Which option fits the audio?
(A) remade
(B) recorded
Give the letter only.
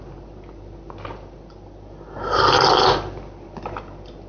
B